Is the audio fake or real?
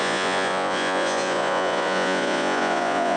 fake